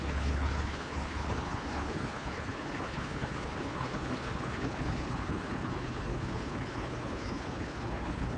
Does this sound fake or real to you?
fake